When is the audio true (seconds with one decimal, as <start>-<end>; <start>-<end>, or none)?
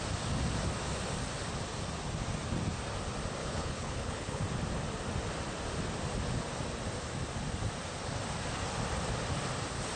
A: 0.0-3.4; 4.4-10.0